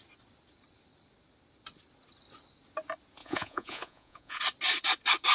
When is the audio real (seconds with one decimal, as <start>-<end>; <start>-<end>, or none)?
0.0-3.2; 4.4-5.3